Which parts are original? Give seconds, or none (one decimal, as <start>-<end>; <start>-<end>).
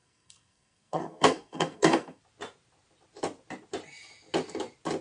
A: 2.2-5.0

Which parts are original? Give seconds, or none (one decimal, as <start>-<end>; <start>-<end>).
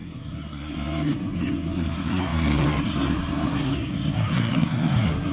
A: none